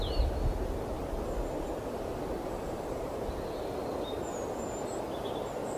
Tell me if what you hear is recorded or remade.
recorded